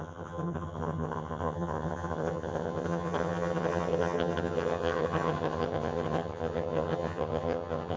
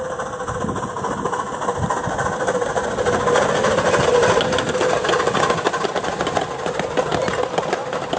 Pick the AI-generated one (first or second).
first